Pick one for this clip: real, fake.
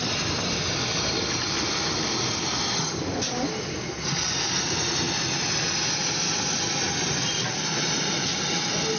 real